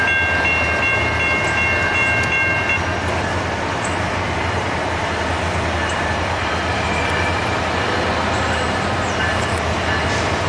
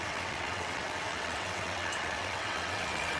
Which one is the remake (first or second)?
second